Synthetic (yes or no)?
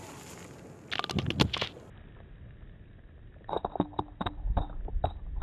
no